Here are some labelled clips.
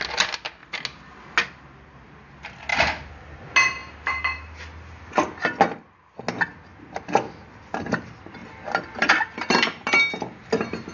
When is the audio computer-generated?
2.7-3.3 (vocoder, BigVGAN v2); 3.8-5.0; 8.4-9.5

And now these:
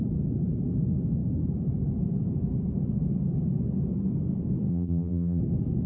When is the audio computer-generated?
4.7-5.4 (vocoder, BigVGAN v2)

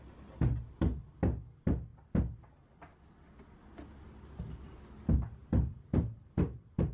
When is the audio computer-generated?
5.4-6.9 (vocoder, BigVGAN v2)